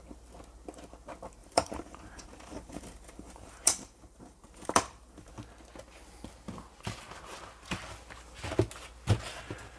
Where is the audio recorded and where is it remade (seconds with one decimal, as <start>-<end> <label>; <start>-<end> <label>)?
0.0-1.4 recorded; 1.4-5.3 remade; 5.3-9.8 recorded